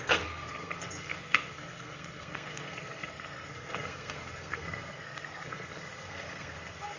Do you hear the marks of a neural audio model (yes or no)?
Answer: yes